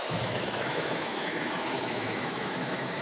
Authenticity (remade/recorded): remade